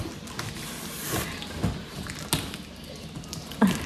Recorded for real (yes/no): yes